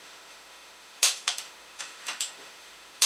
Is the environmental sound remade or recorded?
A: remade